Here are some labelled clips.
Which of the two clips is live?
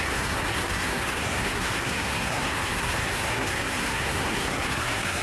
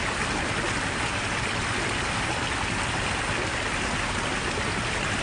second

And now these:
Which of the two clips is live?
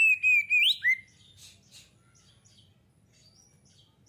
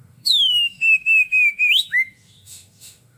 first